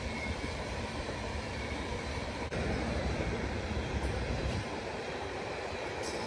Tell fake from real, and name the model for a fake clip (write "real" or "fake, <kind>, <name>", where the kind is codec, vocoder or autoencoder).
fake, vocoder, BigVGAN v2